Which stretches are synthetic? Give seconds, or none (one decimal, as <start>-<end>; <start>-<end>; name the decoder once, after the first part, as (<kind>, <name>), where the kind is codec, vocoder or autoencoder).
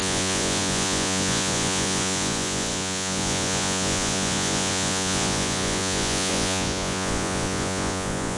0.0-8.4 (vocoder, Vocos)